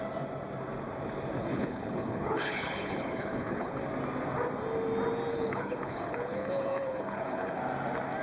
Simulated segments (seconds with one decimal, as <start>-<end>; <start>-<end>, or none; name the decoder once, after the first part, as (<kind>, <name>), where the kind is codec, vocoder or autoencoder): 1.4-3.8 (codec, HILCodec); 5.3-7.6